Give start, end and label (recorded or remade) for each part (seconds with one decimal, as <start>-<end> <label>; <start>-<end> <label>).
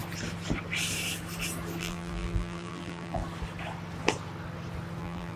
0.0-1.8 recorded; 1.8-3.2 remade; 3.2-5.0 recorded; 5.0-5.4 remade